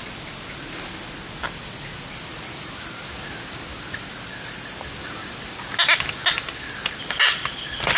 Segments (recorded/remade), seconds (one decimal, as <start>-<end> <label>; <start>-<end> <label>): 0.0-8.0 recorded